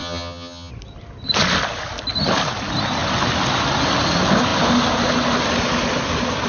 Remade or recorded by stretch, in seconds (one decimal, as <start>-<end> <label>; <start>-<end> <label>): 0.0-0.7 remade; 0.7-6.5 recorded